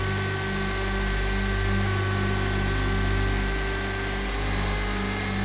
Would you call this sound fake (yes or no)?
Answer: no